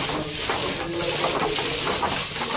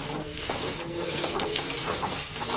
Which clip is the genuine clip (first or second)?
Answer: first